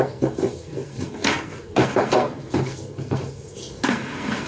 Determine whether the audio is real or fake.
fake